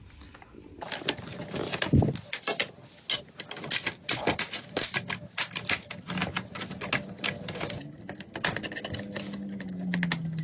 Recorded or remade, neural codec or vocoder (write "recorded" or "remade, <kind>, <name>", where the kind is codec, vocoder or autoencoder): recorded